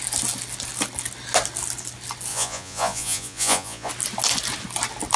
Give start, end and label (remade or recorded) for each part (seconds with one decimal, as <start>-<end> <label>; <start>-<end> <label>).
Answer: 0.0-2.3 recorded; 2.3-3.9 remade; 3.9-5.2 recorded